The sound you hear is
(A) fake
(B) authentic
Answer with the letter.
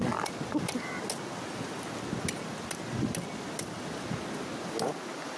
B